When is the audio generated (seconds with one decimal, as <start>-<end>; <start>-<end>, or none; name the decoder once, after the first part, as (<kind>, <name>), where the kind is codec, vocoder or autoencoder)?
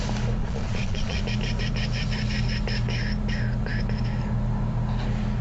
0.4-1.2 (vocoder, Vocos)